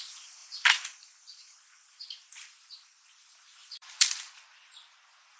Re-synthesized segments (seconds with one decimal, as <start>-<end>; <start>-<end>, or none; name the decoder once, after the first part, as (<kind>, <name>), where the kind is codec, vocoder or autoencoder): 0.4-1.6 (vocoder, BigVGAN v2); 3.6-4.7